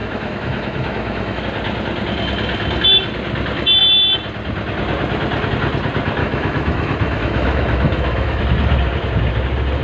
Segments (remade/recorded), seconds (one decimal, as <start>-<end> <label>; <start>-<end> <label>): 0.0-1.4 remade; 1.4-6.2 recorded; 6.2-8.4 remade; 8.4-9.8 recorded